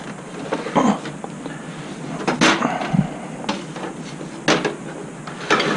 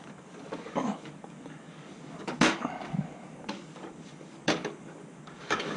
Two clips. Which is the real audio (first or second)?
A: first